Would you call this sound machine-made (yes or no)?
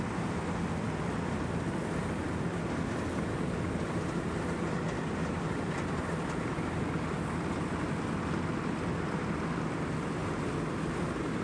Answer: no